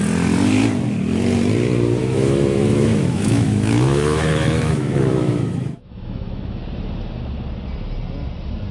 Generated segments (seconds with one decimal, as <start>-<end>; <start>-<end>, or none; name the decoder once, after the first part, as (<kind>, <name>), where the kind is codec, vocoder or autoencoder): 2.0-6.6 (autoencoder, DAC-VAE)